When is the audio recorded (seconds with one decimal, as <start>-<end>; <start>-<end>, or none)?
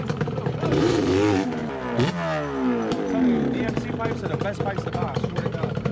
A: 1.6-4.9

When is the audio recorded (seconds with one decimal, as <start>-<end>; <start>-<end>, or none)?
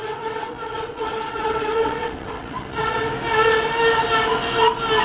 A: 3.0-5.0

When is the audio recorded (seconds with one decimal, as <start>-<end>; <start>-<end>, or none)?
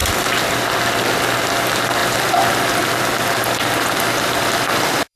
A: 0.0-2.0